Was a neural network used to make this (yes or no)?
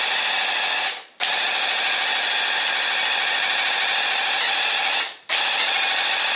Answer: no